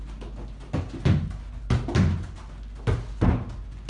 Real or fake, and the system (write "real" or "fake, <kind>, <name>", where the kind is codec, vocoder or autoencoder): real